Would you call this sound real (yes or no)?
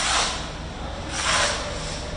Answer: yes